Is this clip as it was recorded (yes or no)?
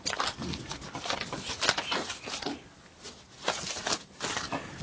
yes